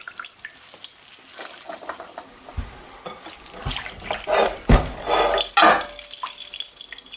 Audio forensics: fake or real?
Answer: real